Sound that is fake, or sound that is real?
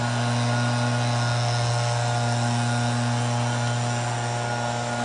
real